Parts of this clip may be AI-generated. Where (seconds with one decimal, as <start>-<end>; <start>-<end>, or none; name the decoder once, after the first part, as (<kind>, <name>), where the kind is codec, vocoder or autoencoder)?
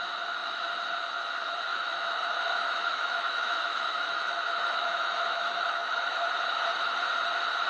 1.7-6.3 (autoencoder, DAC-VAE)